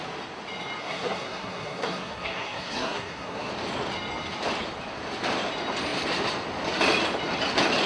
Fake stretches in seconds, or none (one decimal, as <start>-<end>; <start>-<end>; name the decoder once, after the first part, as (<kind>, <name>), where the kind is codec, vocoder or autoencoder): 0.8-3.5 (codec, SNAC)